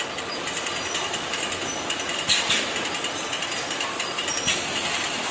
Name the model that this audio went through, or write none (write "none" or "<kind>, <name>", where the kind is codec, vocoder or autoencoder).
none